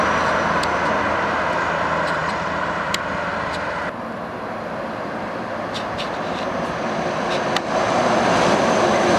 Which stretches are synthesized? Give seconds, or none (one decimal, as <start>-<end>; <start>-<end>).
0.0-9.2